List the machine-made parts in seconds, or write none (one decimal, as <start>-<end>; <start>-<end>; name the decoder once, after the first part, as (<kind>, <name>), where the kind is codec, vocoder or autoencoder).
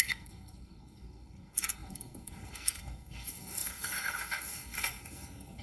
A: 0.0-5.6 (codec, SNAC)